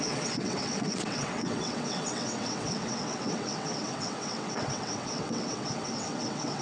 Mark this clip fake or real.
fake